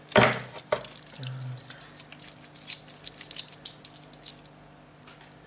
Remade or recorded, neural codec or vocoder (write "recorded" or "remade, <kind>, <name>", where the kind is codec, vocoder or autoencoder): recorded